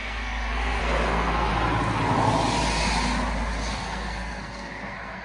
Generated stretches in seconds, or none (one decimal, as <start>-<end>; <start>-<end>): 0.0-1.5; 3.7-5.2